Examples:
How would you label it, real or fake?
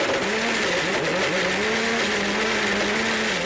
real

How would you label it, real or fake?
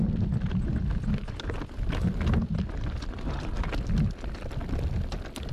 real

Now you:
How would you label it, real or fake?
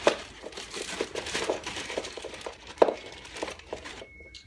fake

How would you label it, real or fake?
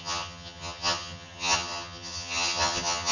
fake